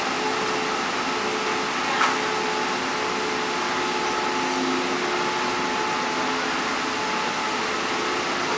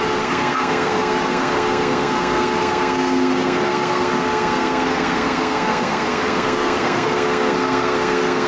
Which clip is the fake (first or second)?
second